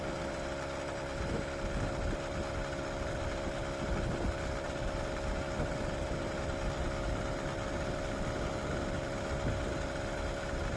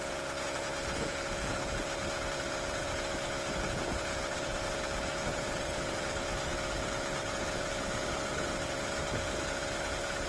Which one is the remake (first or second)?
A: second